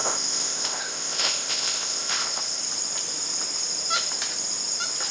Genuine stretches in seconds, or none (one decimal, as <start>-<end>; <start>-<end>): 2.6-5.1